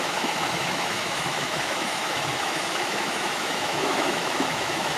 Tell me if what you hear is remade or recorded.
remade